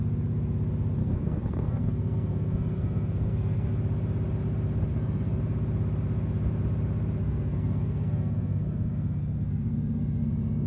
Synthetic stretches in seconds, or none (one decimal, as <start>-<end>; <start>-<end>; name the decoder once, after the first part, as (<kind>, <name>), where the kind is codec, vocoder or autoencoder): 1.0-3.7 (codec, SNAC); 4.9-5.4; 7.2-10.7

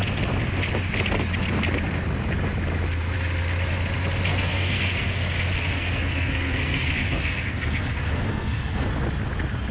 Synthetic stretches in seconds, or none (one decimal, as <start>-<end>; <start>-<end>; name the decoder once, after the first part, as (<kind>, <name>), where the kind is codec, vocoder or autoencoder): 4.3-8.9 (codec, SNAC)

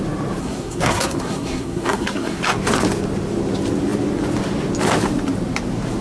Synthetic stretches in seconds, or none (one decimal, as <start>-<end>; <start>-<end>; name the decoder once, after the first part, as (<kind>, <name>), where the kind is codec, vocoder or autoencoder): 0.4-2.4 (codec, SNAC)

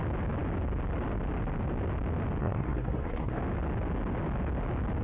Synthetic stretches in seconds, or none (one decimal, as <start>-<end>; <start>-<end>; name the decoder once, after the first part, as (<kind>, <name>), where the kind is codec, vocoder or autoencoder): 2.4-3.4 (codec, SNAC)

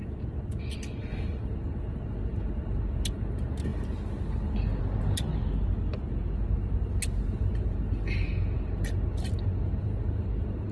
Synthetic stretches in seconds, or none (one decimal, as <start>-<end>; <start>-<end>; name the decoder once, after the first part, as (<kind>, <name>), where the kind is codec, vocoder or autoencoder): none

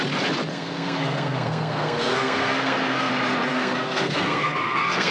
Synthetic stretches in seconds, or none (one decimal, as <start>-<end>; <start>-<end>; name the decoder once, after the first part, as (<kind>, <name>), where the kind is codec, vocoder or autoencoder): 0.5-3.1 (codec, SNAC); 3.5-5.1

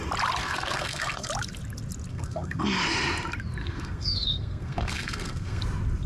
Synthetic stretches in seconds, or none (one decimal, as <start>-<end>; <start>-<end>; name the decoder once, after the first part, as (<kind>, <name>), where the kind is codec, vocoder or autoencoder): 0.4-1.3 (codec, SNAC); 2.1-2.6; 3.6-5.6